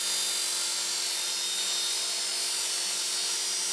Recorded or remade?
recorded